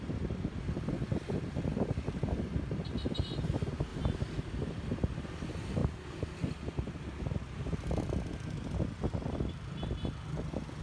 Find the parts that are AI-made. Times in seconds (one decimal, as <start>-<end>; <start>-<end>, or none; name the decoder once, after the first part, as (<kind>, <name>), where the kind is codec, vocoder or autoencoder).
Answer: none